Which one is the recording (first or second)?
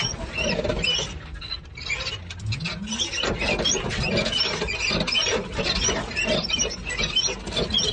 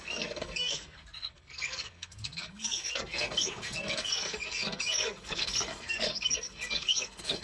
first